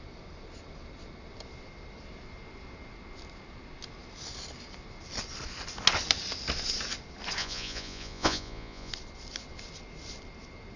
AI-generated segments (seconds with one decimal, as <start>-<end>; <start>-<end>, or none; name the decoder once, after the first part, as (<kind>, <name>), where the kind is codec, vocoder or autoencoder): 7.4-8.9 (vocoder, Vocos)